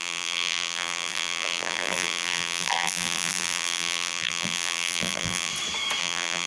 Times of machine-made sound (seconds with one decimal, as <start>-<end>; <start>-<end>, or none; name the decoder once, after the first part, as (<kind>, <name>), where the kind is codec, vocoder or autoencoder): 0.0-5.5 (vocoder, BigVGAN v2); 6.0-6.5